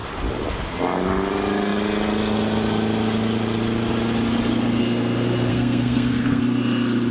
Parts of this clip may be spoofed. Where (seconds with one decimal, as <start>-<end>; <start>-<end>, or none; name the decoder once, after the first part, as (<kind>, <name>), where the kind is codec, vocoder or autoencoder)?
5.5-6.4 (codec, SNAC)